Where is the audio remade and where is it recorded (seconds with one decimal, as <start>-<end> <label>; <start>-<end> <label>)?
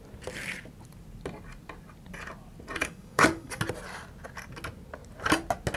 0.0-2.8 recorded; 2.8-3.6 remade; 3.6-5.8 recorded